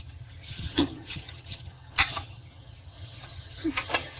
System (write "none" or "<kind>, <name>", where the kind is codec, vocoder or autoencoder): vocoder, HiFi-GAN